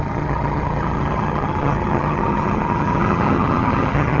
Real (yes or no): no